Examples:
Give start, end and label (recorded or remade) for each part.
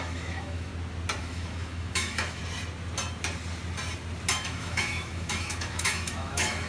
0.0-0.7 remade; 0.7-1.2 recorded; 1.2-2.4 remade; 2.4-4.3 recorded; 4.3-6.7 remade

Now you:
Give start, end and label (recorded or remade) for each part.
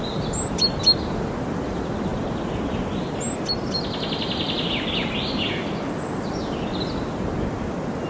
0.0-8.1 recorded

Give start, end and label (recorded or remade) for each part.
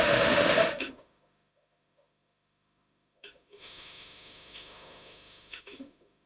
0.0-6.3 remade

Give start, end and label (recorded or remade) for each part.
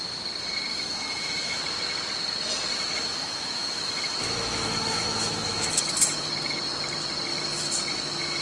0.0-0.7 recorded; 0.7-1.6 remade; 1.6-2.7 recorded; 2.7-6.3 remade; 6.3-7.3 recorded; 7.3-8.4 remade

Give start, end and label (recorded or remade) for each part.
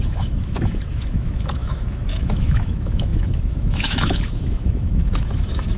0.0-5.8 remade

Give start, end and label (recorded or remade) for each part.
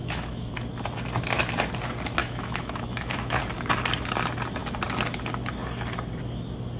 0.0-0.5 remade; 0.5-2.2 recorded; 2.2-3.4 remade; 3.4-6.8 recorded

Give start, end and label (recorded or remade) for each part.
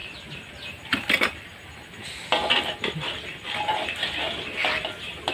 0.0-5.3 recorded